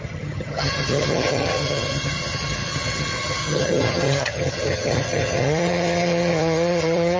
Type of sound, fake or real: fake